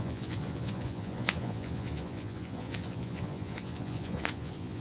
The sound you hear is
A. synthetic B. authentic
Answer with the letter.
A